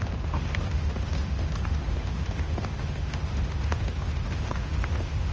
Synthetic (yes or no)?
yes